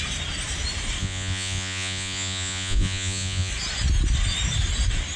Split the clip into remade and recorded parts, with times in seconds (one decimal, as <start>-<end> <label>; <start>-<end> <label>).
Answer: 0.0-1.0 recorded; 1.0-3.5 remade; 3.5-5.2 recorded